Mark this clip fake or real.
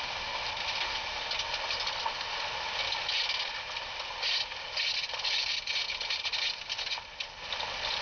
real